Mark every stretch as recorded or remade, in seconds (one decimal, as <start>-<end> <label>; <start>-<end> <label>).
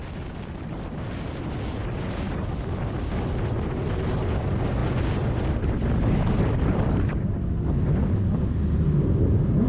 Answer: 0.0-9.7 recorded